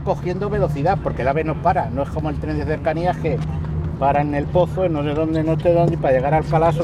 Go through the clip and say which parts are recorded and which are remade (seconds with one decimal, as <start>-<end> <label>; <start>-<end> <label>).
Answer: 0.0-3.3 remade; 3.3-6.8 recorded